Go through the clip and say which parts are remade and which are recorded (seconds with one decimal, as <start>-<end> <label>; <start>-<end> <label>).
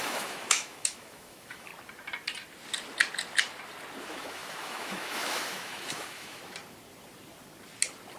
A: 0.0-1.7 remade; 1.7-4.0 recorded; 4.0-6.4 remade; 6.4-8.2 recorded